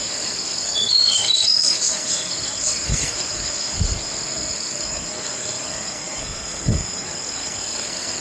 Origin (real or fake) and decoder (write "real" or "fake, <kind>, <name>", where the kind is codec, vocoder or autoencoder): fake, codec, SNAC